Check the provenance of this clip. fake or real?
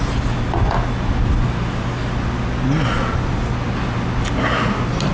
real